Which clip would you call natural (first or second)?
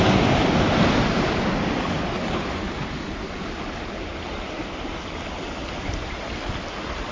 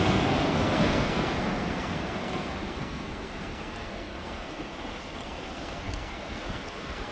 first